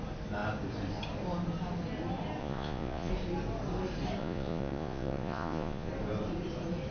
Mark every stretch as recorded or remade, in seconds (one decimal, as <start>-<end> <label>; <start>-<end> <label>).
0.0-2.4 recorded; 2.4-3.1 remade; 3.1-4.2 recorded; 4.2-5.9 remade; 5.9-6.9 recorded